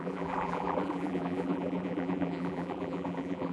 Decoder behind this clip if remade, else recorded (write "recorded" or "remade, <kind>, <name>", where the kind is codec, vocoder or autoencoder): remade, vocoder, BigVGAN v2